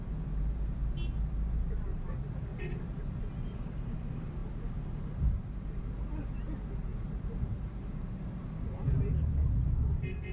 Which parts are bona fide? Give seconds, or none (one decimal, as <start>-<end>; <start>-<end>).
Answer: 0.0-2.5; 3.0-6.9; 8.6-10.3